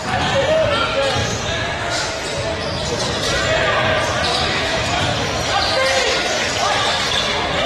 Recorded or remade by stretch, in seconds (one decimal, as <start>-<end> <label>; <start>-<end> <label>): 0.0-1.2 recorded; 1.2-2.1 remade; 2.1-4.3 recorded; 4.3-5.0 remade; 5.0-7.7 recorded